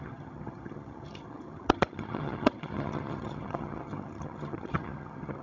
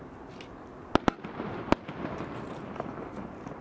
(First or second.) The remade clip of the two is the first